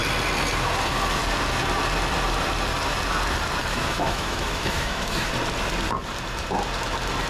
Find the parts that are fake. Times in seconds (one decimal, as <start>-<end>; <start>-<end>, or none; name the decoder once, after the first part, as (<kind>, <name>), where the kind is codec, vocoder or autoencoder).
3.7-5.3 (autoencoder, DAC-VAE)